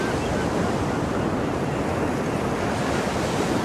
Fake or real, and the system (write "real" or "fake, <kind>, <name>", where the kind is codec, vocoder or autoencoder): real